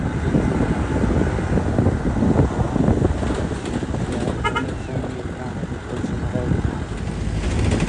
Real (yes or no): yes